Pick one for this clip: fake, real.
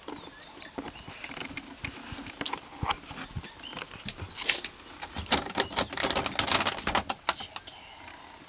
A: real